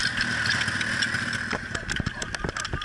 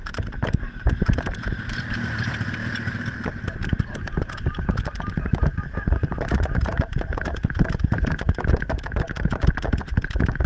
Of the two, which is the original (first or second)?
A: first